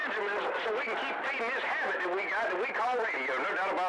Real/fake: real